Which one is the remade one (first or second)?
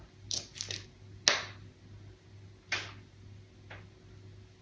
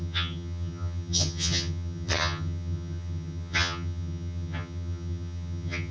second